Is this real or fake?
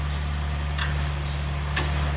real